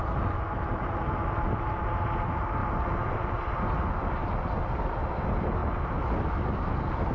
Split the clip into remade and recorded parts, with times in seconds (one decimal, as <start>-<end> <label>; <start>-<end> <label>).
0.0-7.1 recorded